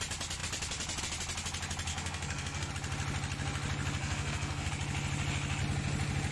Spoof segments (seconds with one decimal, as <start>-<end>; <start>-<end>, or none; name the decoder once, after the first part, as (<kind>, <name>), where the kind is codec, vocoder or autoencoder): 1.9-2.7 (codec, SNAC); 4.0-4.7